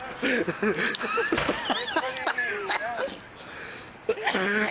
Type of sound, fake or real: real